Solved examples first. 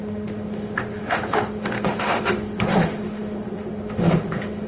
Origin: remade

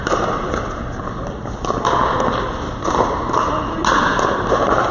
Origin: recorded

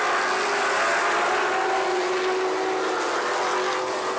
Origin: recorded